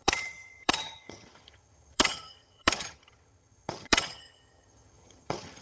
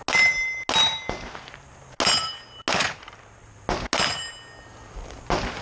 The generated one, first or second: first